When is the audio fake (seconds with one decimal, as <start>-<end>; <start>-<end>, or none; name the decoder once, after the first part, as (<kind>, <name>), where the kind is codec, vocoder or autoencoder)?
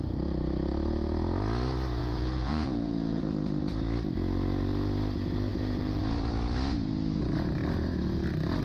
2.0-3.2 (vocoder, Vocos); 5.5-6.0